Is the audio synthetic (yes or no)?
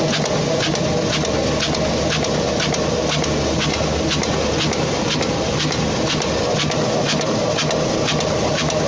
no